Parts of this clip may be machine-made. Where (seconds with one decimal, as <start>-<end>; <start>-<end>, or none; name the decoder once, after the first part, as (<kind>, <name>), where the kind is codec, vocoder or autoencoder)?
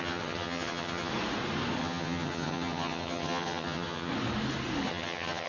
0.0-1.1 (vocoder, HiFi-GAN); 1.8-4.1; 4.9-5.5